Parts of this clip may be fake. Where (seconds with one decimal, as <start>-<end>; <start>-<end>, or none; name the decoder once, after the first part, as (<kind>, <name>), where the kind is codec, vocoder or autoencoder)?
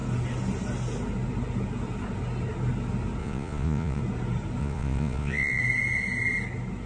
3.2-4.0 (vocoder, Vocos); 4.6-5.6